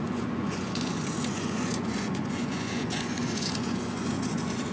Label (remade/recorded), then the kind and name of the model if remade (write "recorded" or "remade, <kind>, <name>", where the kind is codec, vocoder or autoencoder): remade, vocoder, Vocos